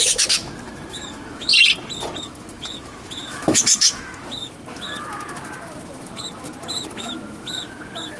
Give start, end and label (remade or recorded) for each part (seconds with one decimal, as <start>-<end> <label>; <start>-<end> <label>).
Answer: 0.0-1.5 remade; 1.5-2.2 recorded; 2.2-8.2 remade